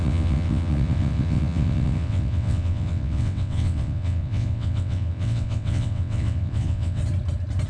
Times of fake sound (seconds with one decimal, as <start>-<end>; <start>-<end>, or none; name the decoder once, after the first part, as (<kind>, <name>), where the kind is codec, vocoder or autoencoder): 0.0-7.0 (vocoder, WaveNeXt)